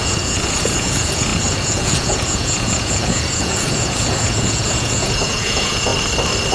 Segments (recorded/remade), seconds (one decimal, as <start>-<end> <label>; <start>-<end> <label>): 0.0-5.9 remade; 5.9-6.5 recorded

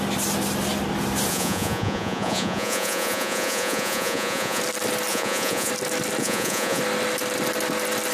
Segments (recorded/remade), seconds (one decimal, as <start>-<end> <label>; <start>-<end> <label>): 0.0-1.3 recorded; 1.3-4.6 remade; 4.6-5.1 recorded; 5.1-5.7 remade; 5.7-6.2 recorded; 6.2-6.8 remade; 6.8-8.1 recorded

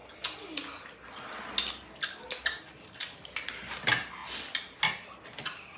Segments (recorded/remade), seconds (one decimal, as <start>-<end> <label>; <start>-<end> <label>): 0.0-5.8 recorded

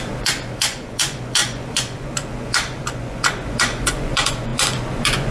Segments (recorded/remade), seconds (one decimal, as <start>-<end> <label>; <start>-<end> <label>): 0.0-5.3 remade

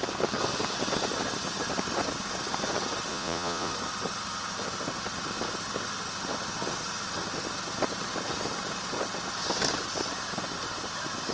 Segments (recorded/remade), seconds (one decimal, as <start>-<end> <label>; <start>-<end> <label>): 0.0-3.1 recorded; 3.1-3.7 remade; 3.7-11.3 recorded

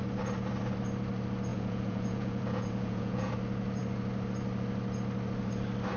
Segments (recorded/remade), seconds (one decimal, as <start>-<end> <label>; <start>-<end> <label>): 0.0-1.5 recorded; 1.5-3.3 remade; 3.3-6.0 recorded

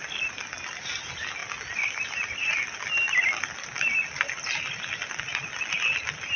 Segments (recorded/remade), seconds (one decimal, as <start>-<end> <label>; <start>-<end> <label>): 0.0-6.4 recorded